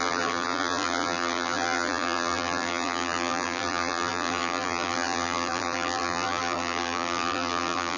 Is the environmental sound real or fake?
fake